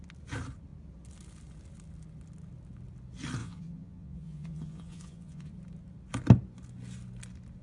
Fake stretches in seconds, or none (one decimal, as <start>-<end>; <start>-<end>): 3.4-5.5